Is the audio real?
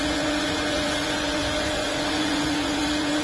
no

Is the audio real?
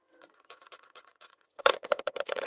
no